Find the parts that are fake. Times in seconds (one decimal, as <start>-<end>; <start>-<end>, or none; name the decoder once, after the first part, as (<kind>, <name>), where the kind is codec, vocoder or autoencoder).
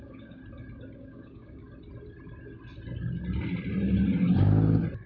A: 0.0-0.4 (codec, DAC); 1.0-1.6